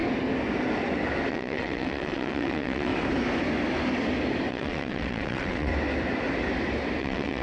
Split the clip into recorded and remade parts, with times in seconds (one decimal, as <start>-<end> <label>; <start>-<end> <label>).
0.0-1.3 recorded; 1.3-2.9 remade; 2.9-4.5 recorded; 4.5-5.7 remade; 5.7-7.0 recorded; 7.0-7.4 remade